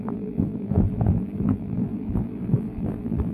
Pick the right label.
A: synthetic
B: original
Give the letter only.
A